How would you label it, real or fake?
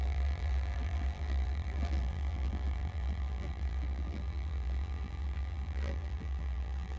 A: fake